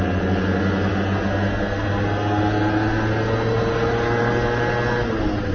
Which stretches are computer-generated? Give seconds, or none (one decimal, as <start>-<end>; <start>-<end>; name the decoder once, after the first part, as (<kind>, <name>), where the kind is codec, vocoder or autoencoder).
none